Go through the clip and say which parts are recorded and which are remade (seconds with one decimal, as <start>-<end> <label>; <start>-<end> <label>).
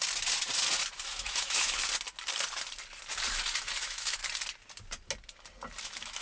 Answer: 0.0-1.1 recorded; 1.1-1.8 remade; 1.8-3.8 recorded; 3.8-4.2 remade; 4.2-5.8 recorded; 5.8-6.2 remade